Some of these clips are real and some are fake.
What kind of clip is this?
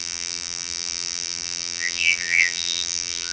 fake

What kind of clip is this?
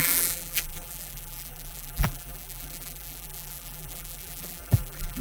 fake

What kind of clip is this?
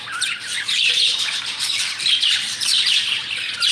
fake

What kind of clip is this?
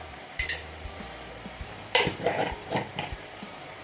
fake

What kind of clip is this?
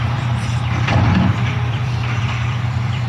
fake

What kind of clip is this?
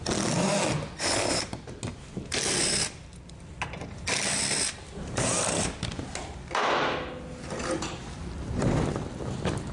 real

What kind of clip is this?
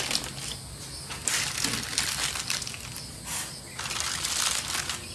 real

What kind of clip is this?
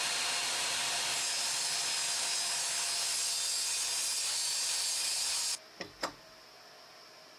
real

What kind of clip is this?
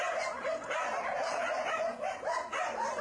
fake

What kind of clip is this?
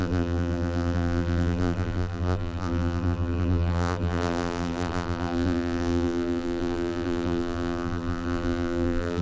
fake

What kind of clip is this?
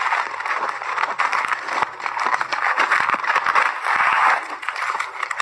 fake